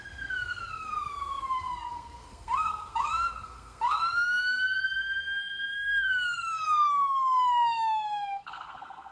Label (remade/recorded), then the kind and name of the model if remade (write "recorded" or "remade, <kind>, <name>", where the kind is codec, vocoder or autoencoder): remade, codec, SNAC